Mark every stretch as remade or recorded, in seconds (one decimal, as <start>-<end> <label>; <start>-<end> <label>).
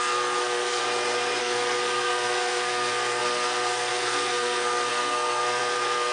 0.0-0.8 remade; 0.8-1.4 recorded; 1.4-6.1 remade